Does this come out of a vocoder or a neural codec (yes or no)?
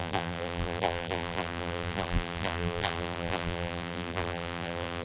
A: yes